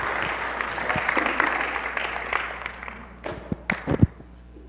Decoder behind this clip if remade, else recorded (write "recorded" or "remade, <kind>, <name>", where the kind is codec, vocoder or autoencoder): recorded